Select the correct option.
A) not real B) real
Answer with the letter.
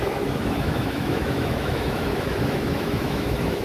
A